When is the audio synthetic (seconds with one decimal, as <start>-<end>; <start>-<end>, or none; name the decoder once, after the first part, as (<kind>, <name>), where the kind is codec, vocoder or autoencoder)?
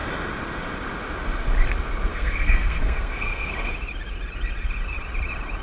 2.1-3.5 (codec, SNAC)